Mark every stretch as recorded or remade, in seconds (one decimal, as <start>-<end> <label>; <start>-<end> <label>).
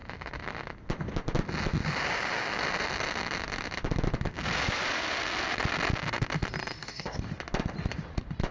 0.0-6.8 recorded; 6.8-7.3 remade; 7.3-8.5 recorded